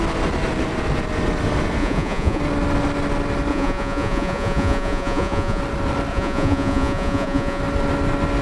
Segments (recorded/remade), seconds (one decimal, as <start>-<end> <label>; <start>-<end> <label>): 0.0-1.8 recorded; 1.8-2.4 remade; 2.4-3.5 recorded; 3.5-5.6 remade; 5.6-6.1 recorded; 6.1-7.6 remade; 7.6-8.4 recorded